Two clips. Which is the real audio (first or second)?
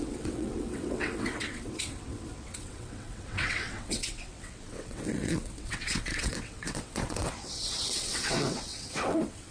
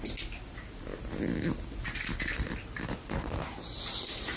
second